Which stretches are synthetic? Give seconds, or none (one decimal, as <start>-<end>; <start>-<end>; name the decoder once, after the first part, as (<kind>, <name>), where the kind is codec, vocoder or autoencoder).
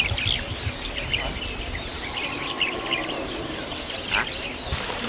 none